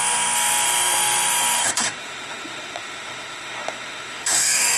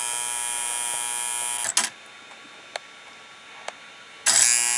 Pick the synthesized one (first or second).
first